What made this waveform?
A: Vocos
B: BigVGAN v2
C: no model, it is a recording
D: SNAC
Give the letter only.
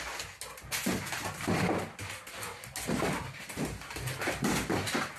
C